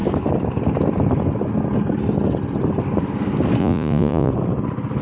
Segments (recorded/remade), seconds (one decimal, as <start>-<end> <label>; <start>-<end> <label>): 0.0-3.6 recorded; 3.6-4.3 remade; 4.3-5.0 recorded